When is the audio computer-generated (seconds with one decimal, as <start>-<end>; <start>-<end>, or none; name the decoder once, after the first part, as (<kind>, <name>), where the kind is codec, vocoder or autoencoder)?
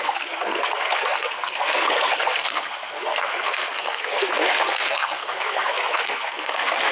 0.0-6.9 (codec, SNAC)